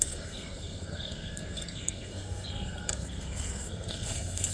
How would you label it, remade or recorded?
remade